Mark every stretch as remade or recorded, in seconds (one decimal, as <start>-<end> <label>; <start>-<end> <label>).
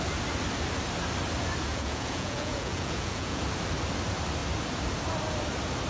0.0-1.7 recorded; 1.7-3.4 remade; 3.4-5.9 recorded